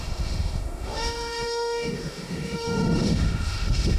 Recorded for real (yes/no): no